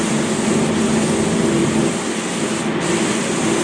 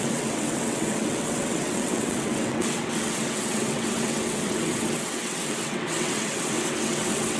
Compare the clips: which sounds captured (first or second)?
first